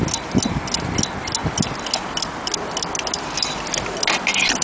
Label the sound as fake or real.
real